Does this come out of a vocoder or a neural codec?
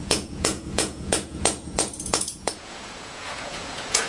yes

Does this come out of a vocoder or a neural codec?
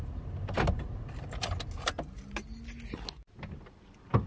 no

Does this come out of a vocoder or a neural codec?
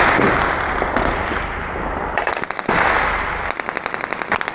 no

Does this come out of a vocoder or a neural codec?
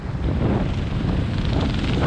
no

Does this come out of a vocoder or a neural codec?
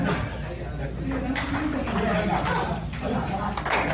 no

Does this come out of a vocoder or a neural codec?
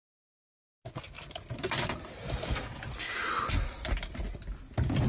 no